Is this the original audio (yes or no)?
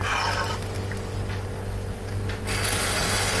yes